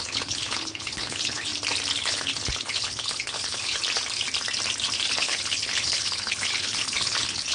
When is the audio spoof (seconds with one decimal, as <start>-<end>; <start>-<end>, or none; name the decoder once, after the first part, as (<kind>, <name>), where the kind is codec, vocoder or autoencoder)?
0.0-1.5 (codec, HILCodec); 2.0-3.8; 5.1-7.5